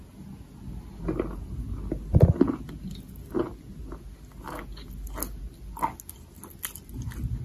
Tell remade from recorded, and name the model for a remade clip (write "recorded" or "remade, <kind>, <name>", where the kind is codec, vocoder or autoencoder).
recorded